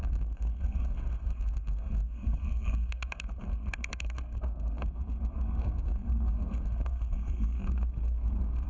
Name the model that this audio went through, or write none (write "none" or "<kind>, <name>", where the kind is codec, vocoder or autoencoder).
codec, SNAC